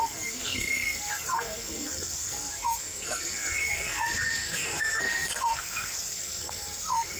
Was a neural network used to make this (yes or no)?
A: yes